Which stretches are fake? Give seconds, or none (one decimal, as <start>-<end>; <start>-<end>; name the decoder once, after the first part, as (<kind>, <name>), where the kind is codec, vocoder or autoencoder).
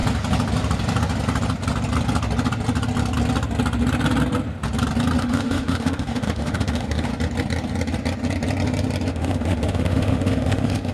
5.2-7.1 (autoencoder, DAC-VAE); 9.1-10.9